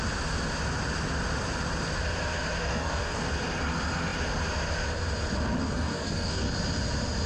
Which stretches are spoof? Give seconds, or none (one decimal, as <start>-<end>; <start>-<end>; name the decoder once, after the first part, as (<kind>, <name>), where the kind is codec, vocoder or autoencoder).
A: 2.6-3.2 (codec, DAC); 5.6-6.5